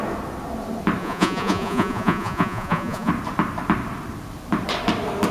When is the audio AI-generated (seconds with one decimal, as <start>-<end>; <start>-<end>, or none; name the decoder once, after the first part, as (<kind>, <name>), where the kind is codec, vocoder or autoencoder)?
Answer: 1.0-3.1 (vocoder, Vocos)